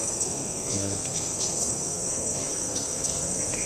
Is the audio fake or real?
fake